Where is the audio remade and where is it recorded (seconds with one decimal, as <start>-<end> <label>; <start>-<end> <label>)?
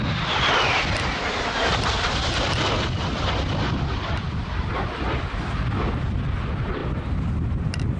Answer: 0.0-8.0 recorded